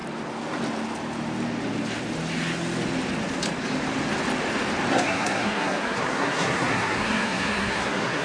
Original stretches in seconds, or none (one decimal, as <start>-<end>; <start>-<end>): 0.0-4.9